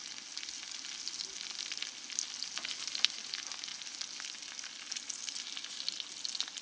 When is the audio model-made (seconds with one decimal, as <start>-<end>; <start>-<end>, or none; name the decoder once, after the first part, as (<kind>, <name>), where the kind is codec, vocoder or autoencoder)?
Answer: none